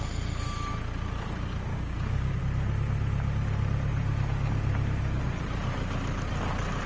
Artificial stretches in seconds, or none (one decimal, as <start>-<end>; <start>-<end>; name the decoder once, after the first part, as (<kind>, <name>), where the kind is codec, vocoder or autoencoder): 1.7-2.4 (codec, DAC)